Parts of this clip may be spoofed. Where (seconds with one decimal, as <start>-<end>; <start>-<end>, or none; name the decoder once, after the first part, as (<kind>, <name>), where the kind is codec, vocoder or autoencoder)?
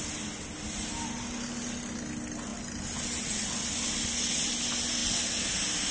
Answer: none